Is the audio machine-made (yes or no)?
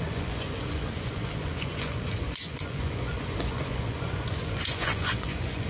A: yes